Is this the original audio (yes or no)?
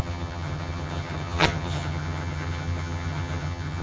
no